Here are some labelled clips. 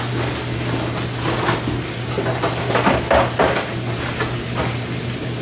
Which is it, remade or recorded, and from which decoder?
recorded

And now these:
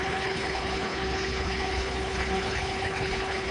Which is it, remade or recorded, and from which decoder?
remade, codec, HILCodec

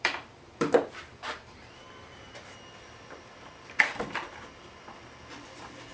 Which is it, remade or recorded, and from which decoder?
remade, vocoder, BigVGAN v2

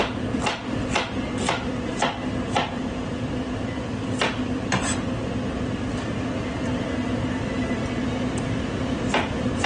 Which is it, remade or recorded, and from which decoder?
recorded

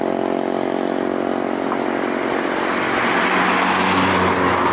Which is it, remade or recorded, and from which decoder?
recorded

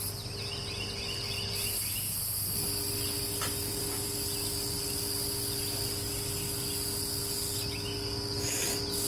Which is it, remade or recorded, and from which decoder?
recorded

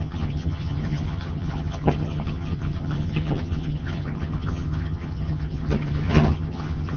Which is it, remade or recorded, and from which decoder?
remade, vocoder, HiFi-GAN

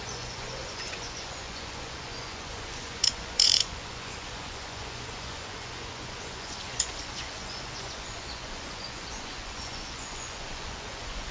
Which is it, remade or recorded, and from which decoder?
remade, vocoder, Vocos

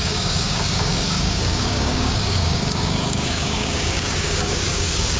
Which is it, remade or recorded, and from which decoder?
remade, codec, DAC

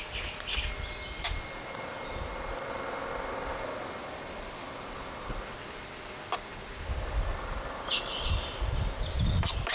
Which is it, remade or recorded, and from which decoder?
recorded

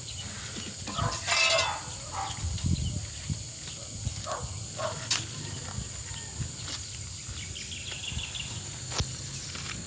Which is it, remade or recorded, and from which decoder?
recorded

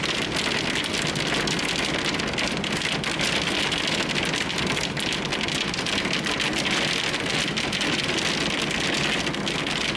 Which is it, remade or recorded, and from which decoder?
recorded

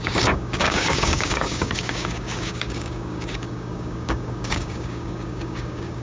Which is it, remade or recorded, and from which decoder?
remade, codec, DAC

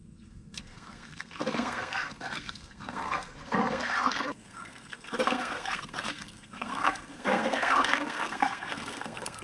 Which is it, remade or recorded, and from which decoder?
remade, codec, SNAC